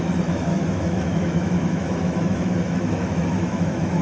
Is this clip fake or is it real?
fake